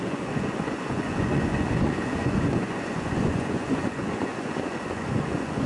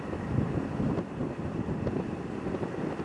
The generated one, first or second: first